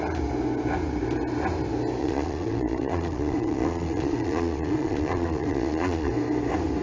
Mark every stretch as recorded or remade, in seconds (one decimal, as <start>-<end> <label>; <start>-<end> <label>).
0.0-2.0 recorded; 2.0-6.1 remade; 6.1-6.8 recorded